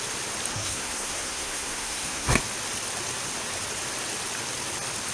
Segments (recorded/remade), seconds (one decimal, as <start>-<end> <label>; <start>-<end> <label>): 0.0-0.5 recorded; 0.5-2.4 remade; 2.4-5.1 recorded

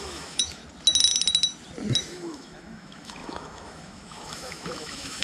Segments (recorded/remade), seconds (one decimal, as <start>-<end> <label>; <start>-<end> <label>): 0.0-0.6 remade; 0.6-2.0 recorded; 2.0-5.2 remade

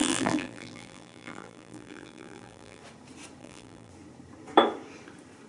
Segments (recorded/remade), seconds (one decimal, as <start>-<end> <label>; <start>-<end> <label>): 0.0-2.8 remade; 2.8-3.4 recorded; 3.4-3.9 remade; 3.9-5.5 recorded